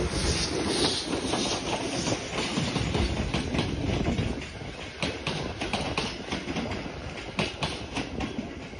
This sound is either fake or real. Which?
real